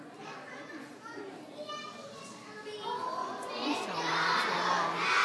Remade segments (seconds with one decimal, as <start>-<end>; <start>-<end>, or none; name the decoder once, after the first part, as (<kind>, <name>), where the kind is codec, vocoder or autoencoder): 3.2-4.4 (vocoder, Vocos)